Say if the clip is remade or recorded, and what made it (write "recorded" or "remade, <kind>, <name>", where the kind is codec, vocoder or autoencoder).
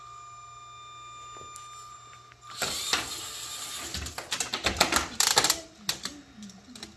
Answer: recorded